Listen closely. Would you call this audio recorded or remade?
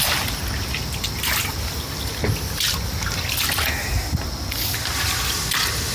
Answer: recorded